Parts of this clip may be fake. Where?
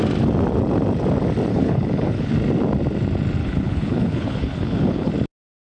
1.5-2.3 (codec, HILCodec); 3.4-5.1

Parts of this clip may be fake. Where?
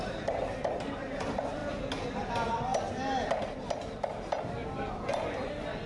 0.0-2.7 (vocoder, BigVGAN v2); 4.4-5.9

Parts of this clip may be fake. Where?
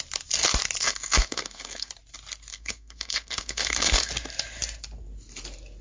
0.8-1.9 (codec, SNAC); 2.5-4.1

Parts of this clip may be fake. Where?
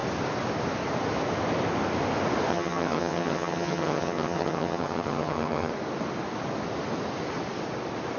2.5-5.7 (vocoder, HiFi-GAN)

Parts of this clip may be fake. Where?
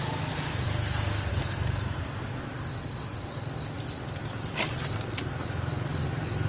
1.3-2.0 (codec, SNAC)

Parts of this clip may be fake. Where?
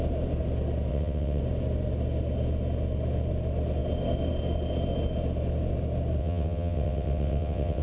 0.9-1.4 (vocoder, WaveNeXt); 6.2-7.8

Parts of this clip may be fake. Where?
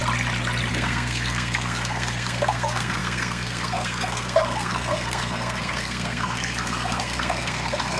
0.7-8.0 (codec, SNAC)